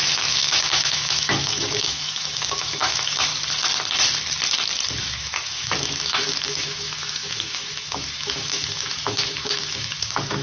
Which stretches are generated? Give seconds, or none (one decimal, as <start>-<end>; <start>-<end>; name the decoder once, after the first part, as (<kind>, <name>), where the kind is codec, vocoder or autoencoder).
0.0-3.3 (autoencoder, DAC-VAE); 5.0-10.4